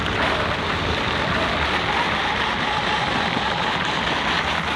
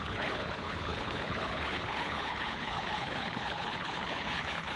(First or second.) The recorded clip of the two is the first